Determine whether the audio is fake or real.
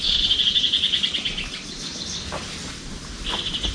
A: real